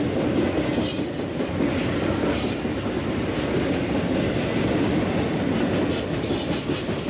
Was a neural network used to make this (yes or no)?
no